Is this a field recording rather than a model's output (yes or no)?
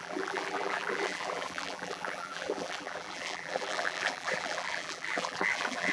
no